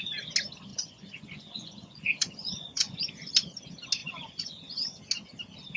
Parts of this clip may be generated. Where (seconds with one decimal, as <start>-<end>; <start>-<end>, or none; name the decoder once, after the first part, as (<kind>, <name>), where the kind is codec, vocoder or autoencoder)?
0.7-3.0 (vocoder, Vocos); 4.0-5.0